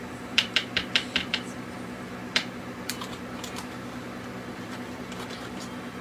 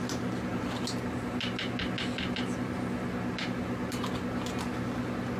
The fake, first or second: first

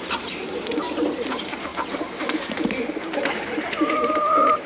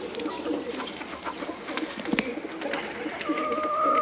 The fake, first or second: first